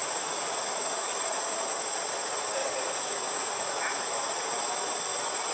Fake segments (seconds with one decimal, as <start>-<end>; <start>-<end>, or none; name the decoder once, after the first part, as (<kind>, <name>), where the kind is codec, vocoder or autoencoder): 0.0-1.4 (vocoder, Vocos); 2.6-4.5